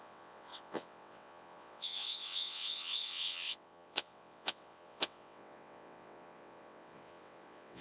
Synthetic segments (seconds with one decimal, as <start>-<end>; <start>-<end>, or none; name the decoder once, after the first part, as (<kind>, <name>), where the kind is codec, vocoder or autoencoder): 0.0-7.8 (vocoder, WaveNeXt)